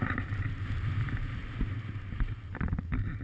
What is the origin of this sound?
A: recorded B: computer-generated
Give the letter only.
A